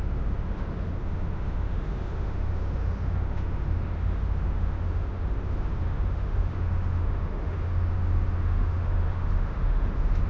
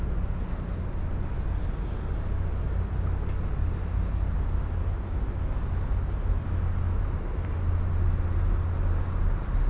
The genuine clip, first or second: second